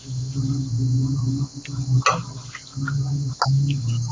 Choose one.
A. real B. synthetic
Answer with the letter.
A